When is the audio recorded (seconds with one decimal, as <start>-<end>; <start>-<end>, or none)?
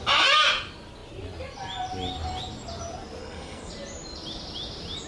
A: 0.0-3.2; 3.7-5.1